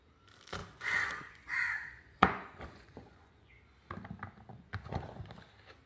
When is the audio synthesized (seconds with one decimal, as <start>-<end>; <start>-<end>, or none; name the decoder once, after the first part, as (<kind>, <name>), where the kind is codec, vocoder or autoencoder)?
0.6-3.6 (vocoder, Vocos); 4.5-5.3